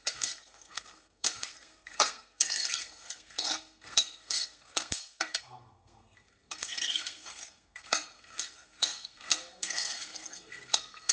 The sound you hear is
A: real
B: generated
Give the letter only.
B